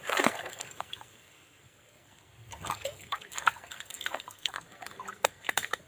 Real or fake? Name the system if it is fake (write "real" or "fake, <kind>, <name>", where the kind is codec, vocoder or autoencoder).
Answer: fake, codec, SNAC